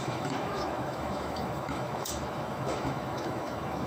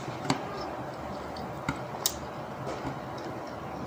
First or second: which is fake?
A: first